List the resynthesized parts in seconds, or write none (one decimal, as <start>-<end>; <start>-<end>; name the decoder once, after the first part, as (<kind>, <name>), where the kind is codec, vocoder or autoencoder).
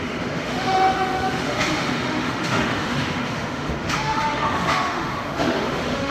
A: 0.0-6.1 (autoencoder, DAC-VAE)